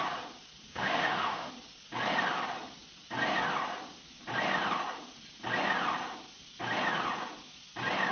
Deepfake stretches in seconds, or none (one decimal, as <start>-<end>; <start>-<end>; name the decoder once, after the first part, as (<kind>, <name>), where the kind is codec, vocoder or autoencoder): 0.7-1.5 (autoencoder, DAC-VAE)